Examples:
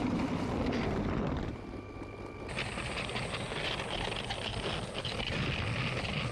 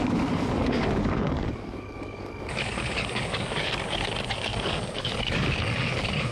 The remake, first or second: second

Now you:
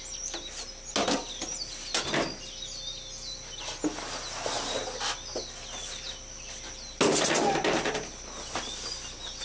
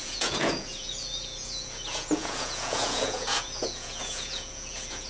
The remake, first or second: second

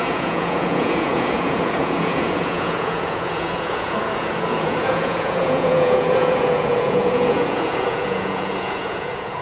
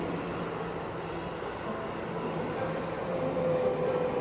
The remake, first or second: first